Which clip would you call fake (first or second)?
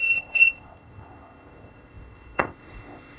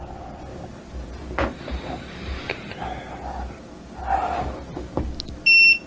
first